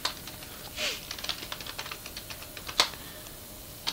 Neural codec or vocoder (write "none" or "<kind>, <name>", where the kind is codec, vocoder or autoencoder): none